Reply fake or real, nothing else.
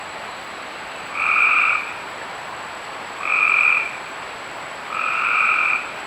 fake